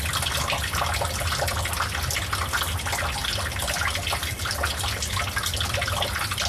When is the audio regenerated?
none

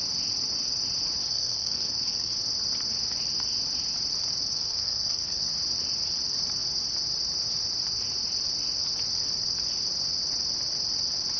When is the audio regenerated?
1.3-2.3 (codec, SNAC); 4.5-5.5

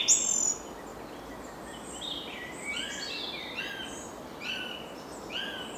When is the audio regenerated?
none

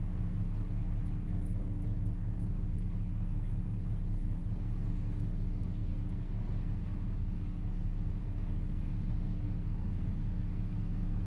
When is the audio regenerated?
0.0-11.3 (codec, SNAC)